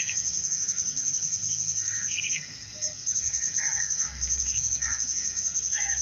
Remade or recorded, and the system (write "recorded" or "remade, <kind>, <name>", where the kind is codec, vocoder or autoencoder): remade, codec, SNAC